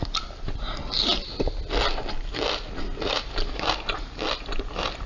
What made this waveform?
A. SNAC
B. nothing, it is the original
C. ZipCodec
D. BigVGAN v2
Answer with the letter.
B